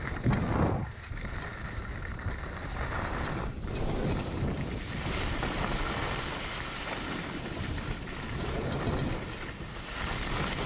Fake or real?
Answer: real